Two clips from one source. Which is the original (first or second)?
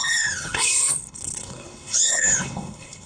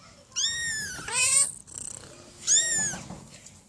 second